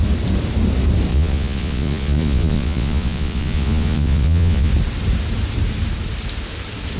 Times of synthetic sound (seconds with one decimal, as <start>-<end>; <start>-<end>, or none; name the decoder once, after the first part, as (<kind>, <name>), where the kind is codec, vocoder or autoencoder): 1.1-4.7 (vocoder, Vocos)